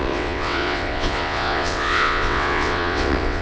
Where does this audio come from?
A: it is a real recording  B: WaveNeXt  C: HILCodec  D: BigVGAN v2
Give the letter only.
B